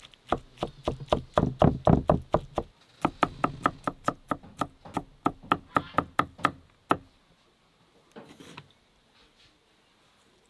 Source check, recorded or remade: recorded